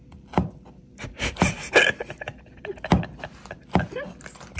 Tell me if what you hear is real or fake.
real